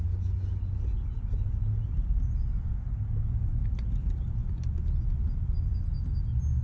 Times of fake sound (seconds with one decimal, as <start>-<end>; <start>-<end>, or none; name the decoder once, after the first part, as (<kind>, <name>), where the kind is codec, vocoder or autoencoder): none